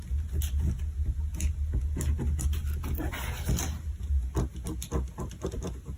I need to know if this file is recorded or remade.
recorded